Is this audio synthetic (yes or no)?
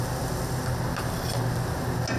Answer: no